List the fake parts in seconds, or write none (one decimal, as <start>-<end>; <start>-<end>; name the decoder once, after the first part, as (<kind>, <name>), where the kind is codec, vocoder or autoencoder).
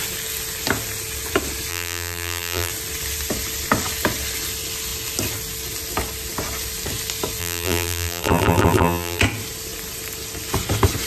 1.7-2.7 (vocoder, BigVGAN v2); 7.4-9.2